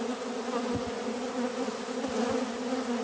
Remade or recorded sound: recorded